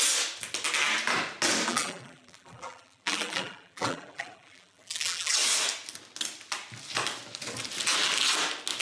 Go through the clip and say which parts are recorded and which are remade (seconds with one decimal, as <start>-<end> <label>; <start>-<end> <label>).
0.0-1.7 recorded; 1.7-5.3 remade; 5.3-8.8 recorded